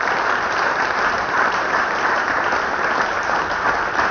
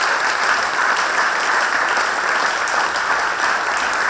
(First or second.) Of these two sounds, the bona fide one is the second